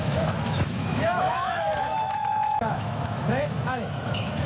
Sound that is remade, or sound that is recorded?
remade